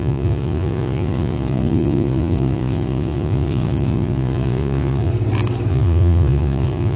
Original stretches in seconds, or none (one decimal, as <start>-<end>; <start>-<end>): 5.1-5.7